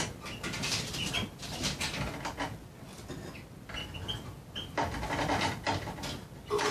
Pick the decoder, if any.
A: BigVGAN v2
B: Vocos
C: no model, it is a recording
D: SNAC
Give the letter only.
C